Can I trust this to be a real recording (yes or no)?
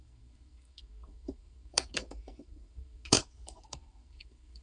no